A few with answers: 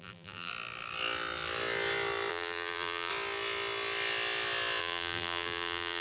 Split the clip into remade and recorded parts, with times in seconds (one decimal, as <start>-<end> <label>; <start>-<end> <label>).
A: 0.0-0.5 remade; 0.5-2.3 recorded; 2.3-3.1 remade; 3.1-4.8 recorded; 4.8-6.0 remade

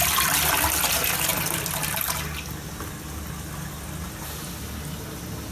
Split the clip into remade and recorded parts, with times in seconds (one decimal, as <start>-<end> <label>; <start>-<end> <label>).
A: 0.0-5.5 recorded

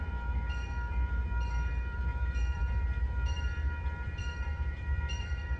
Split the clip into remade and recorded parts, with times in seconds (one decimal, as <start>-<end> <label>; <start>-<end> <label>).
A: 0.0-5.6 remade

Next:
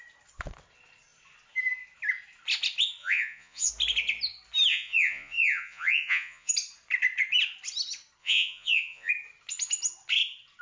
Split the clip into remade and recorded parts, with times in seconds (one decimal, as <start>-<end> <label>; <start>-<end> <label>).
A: 0.0-3.0 recorded; 3.0-3.7 remade; 3.7-4.7 recorded; 4.7-6.5 remade; 6.5-8.2 recorded; 8.2-9.1 remade; 9.1-10.6 recorded